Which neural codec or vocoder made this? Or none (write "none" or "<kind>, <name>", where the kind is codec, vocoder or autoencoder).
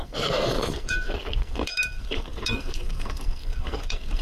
codec, SNAC